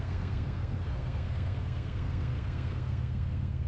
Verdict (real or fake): fake